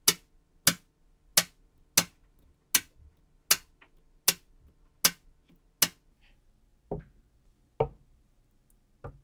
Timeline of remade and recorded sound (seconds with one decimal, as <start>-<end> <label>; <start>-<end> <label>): 0.0-9.2 recorded